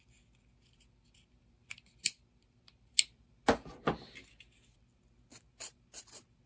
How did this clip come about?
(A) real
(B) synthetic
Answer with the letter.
A